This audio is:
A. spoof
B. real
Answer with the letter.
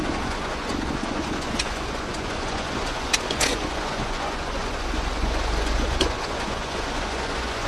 A